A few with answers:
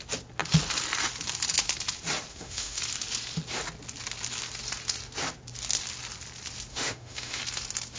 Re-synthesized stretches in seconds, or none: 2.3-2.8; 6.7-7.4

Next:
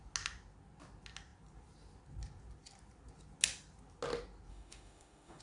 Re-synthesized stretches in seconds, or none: 4.5-5.4

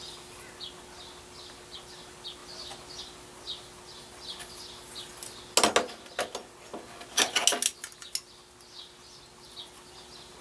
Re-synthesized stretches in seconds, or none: none

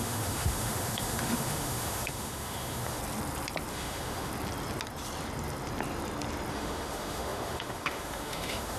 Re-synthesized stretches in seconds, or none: 0.0-3.0; 3.7-4.3; 6.5-8.8

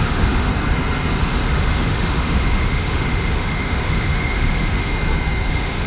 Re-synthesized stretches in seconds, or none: 0.0-0.5; 1.2-4.9; 5.5-5.9

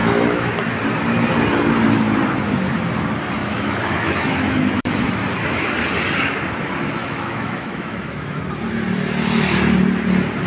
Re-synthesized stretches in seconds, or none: 0.0-0.7; 3.4-5.0; 7.0-8.4

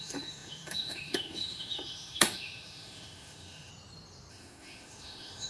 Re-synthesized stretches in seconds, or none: 0.0-3.7; 4.3-5.5